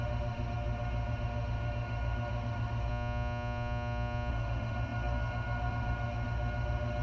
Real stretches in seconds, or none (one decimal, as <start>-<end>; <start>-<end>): 2.9-4.3